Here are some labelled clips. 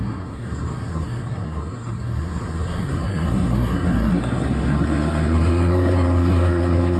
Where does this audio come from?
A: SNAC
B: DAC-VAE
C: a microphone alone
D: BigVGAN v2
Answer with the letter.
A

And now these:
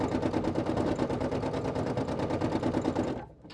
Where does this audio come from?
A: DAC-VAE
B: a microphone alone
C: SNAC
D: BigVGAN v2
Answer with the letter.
B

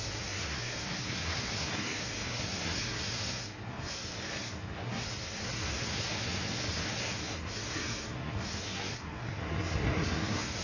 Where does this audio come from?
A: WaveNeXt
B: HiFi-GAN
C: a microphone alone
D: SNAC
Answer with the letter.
D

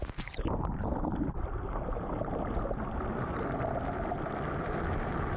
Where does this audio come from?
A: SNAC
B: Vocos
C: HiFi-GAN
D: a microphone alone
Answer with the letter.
D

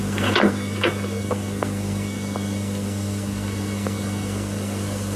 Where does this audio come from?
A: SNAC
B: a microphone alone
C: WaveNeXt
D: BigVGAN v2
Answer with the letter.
A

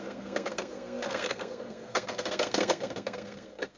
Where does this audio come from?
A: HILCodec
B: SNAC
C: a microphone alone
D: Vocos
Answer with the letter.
B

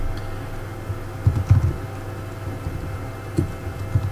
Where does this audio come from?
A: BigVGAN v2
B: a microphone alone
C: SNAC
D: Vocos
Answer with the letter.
B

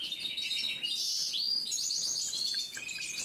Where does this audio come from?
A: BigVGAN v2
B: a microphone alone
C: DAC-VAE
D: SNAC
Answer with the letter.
B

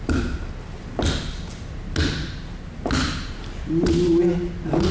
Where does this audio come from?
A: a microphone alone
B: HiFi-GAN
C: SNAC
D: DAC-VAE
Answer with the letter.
A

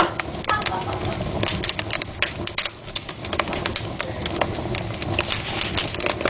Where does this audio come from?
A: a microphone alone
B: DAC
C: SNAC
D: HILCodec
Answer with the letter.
A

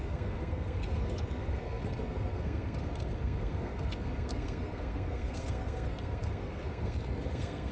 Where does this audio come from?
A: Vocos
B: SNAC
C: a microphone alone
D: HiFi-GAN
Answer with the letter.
B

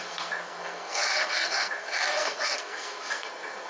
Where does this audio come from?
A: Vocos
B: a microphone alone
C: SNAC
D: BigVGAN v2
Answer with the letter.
C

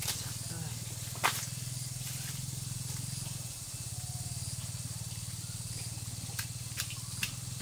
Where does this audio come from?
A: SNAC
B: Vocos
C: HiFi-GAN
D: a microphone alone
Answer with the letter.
D